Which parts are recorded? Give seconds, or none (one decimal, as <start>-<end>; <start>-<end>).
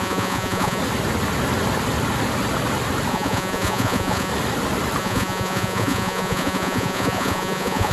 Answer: 0.8-3.1; 4.3-5.0